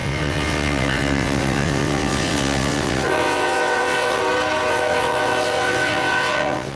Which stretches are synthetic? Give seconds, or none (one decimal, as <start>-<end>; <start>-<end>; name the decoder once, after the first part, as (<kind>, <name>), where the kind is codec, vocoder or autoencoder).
0.0-4.2 (vocoder, WaveNeXt); 4.7-6.8